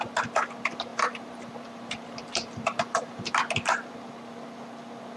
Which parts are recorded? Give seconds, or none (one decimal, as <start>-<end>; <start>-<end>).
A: 0.0-0.9; 4.0-5.2